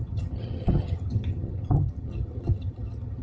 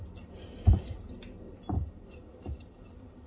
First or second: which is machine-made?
first